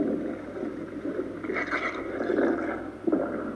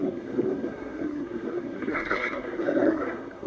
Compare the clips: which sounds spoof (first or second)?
second